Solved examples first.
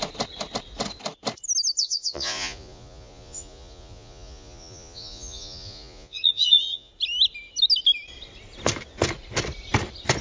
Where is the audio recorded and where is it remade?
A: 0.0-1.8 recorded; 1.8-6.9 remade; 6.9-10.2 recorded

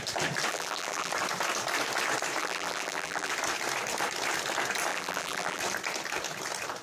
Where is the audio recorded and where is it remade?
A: 0.0-0.5 recorded; 0.5-1.1 remade; 1.1-2.4 recorded; 2.4-3.3 remade; 3.3-4.9 recorded; 4.9-5.6 remade; 5.6-6.8 recorded